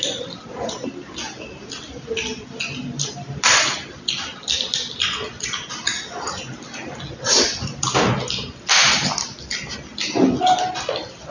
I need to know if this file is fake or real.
real